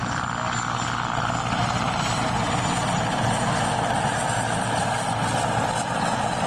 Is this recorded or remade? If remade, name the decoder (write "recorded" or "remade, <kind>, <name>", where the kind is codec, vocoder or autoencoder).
recorded